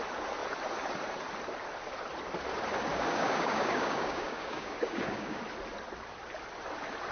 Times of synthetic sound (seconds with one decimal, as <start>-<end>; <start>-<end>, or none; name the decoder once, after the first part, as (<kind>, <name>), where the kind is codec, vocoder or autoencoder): 2.9-5.4 (codec, DAC)